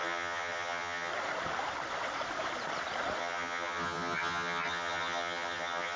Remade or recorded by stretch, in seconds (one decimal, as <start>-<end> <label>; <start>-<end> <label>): 0.0-1.1 remade; 1.1-3.2 recorded; 3.2-6.0 remade